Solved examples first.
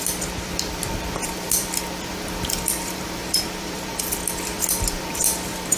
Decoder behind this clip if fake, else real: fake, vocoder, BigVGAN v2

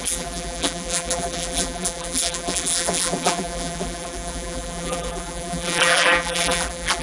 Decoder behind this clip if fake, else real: fake, vocoder, BigVGAN v2